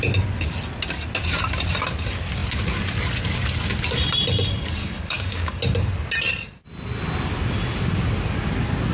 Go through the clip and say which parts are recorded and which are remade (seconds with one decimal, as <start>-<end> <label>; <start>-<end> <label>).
0.0-4.8 recorded; 4.8-5.6 remade; 5.6-8.9 recorded